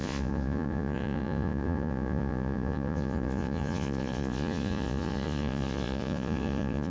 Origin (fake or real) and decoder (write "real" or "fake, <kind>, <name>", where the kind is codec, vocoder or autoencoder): fake, vocoder, Vocos